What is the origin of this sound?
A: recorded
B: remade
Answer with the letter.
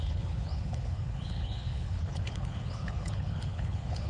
B